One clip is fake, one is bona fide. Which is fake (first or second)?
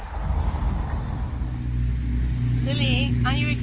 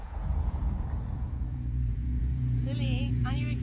second